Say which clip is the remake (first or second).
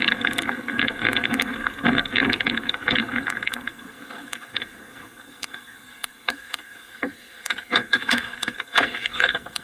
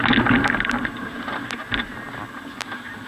first